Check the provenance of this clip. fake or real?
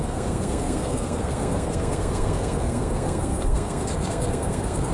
fake